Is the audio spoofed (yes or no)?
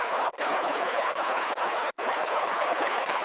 yes